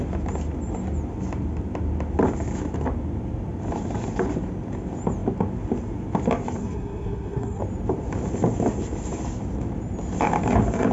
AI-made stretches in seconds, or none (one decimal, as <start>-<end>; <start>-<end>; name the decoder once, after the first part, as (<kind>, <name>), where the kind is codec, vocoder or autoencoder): 6.6-7.6 (codec, SNAC)